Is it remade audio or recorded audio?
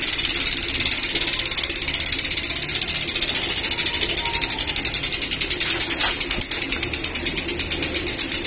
recorded